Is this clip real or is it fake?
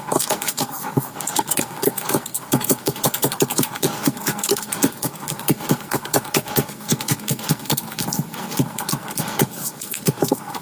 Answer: fake